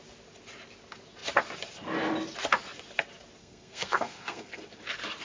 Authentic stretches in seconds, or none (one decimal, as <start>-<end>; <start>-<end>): 0.0-3.4; 4.6-5.2